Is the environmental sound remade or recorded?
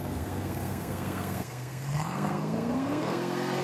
remade